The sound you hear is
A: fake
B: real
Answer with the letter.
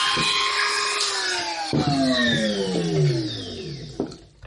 B